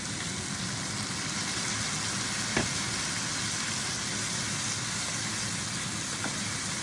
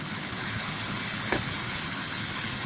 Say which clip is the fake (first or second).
second